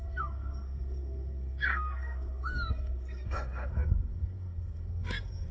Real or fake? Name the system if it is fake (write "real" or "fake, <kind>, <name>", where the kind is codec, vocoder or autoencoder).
fake, codec, SNAC